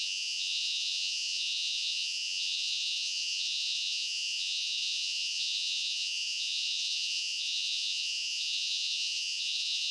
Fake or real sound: fake